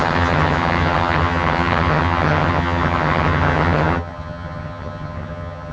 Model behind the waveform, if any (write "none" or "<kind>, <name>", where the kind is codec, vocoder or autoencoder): vocoder, HiFi-GAN